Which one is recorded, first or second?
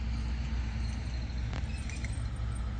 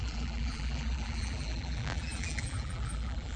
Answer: first